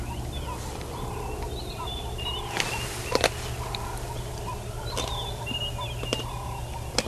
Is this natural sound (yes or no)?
yes